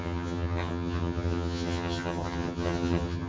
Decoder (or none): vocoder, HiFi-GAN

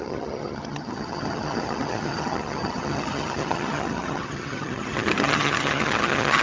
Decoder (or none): vocoder, HiFi-GAN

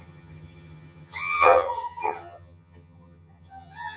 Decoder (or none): vocoder, HiFi-GAN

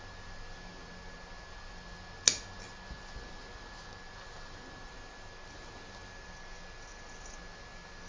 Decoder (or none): none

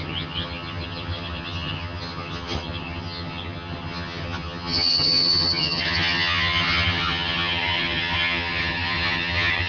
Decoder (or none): vocoder, HiFi-GAN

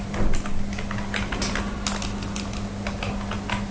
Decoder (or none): none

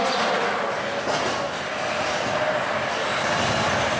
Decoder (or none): none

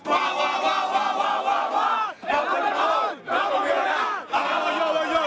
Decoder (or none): none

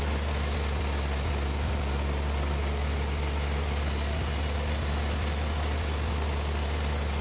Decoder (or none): none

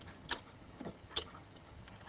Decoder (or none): vocoder, HiFi-GAN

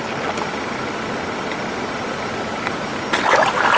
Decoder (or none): none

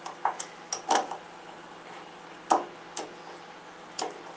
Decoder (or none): none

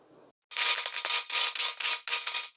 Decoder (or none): none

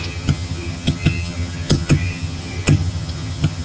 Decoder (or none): vocoder, HiFi-GAN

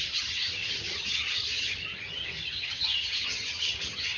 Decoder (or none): vocoder, HiFi-GAN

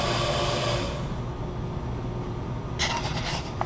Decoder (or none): none